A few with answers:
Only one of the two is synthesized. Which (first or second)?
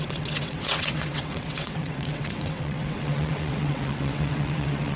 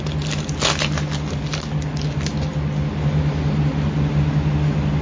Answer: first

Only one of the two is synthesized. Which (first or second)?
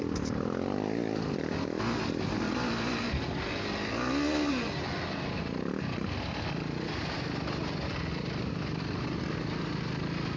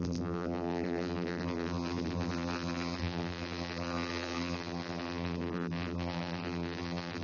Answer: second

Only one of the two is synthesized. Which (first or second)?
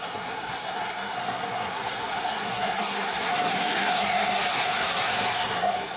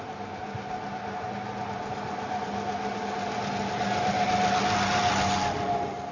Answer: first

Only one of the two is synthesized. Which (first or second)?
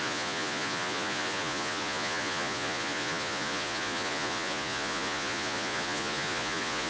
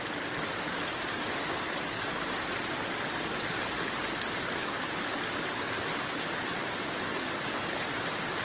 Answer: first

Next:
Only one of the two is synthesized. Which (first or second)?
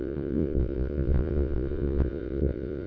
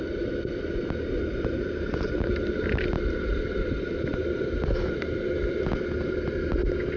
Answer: first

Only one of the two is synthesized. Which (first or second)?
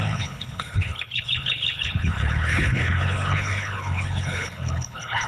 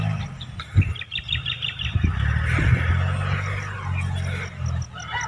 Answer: first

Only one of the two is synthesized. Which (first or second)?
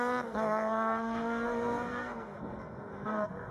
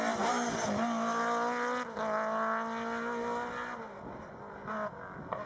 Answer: first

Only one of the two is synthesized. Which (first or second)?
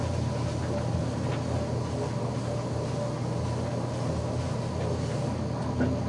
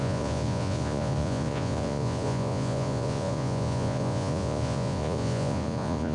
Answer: second